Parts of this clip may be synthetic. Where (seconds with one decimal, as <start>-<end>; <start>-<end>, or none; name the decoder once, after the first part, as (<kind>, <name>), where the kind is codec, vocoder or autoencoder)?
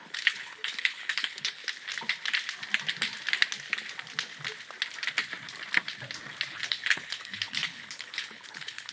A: 0.0-1.6 (codec, HILCodec); 6.5-8.9